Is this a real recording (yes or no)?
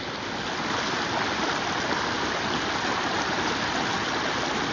yes